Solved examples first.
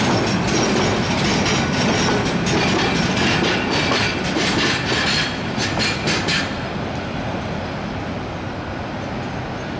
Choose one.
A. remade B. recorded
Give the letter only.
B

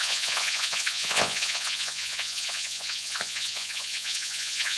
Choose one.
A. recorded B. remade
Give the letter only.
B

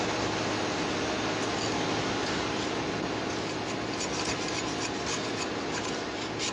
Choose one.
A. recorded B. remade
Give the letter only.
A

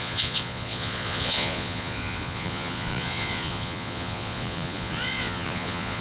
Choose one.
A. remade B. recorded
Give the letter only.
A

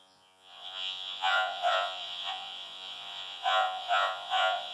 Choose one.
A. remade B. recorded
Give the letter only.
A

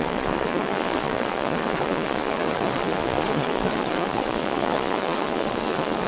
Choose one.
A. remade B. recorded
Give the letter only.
A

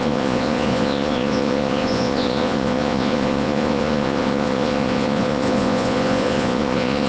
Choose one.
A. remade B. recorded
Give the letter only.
A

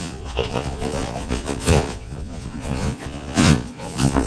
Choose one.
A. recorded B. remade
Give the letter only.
B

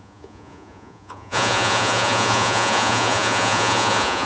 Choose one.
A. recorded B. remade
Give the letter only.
B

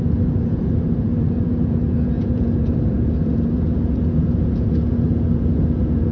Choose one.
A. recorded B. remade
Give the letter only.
B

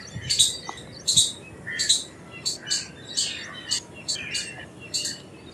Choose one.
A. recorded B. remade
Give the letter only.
A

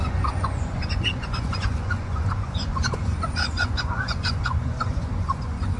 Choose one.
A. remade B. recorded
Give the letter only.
A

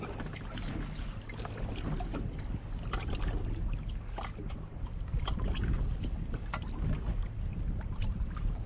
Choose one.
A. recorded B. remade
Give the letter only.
A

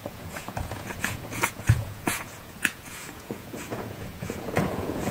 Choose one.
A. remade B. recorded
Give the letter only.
A